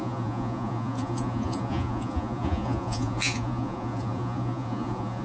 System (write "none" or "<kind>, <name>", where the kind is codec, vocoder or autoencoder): vocoder, Vocos